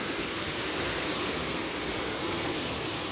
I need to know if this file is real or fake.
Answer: fake